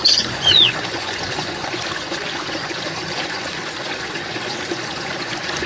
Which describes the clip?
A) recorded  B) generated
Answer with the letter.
B